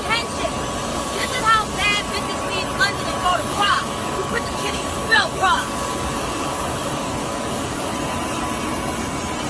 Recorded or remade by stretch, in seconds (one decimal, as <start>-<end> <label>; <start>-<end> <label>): 0.0-0.9 recorded; 0.9-1.4 remade; 1.4-3.3 recorded; 3.3-7.9 remade; 7.9-9.5 recorded